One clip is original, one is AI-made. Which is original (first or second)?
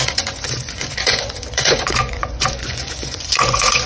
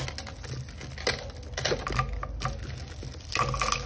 second